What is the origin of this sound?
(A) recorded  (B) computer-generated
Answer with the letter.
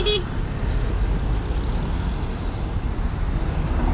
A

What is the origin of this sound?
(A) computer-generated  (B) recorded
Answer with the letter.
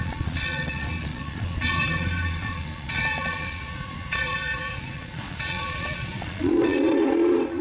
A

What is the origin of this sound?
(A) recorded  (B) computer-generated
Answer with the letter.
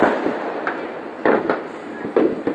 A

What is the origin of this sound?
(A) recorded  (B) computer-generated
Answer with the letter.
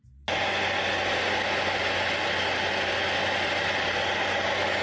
A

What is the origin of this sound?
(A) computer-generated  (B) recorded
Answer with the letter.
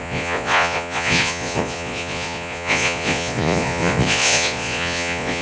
A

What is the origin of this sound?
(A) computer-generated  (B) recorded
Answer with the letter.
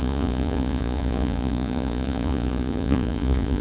A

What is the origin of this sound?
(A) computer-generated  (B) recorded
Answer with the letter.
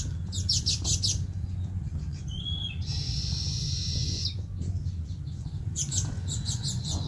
A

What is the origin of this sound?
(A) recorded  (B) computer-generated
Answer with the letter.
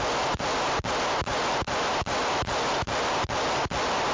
A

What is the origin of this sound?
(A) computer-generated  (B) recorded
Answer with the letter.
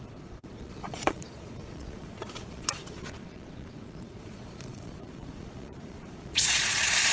A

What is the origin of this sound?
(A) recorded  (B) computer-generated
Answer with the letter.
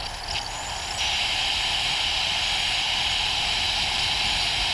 A